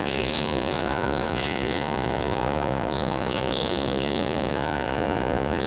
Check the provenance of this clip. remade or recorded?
remade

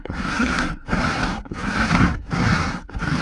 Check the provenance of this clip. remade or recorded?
remade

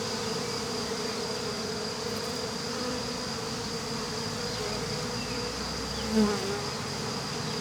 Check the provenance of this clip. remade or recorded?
recorded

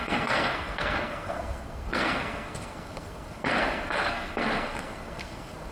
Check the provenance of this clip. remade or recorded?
remade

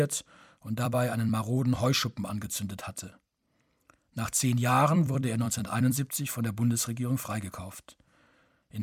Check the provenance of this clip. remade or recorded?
remade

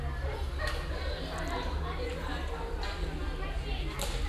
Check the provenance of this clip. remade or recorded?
recorded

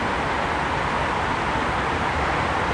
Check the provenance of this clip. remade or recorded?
recorded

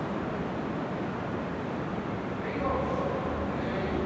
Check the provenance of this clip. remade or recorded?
recorded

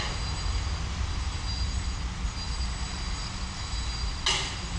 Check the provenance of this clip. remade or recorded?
recorded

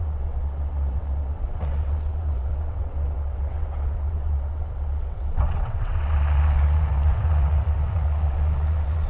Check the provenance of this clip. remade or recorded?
remade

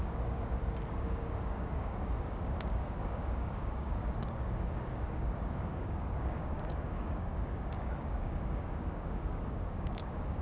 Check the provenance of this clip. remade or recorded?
remade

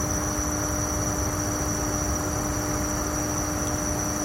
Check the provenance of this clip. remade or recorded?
recorded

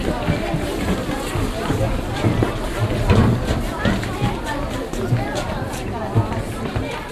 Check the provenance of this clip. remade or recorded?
recorded